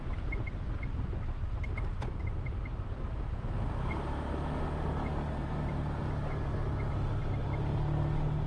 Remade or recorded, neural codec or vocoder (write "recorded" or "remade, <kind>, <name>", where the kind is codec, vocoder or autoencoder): recorded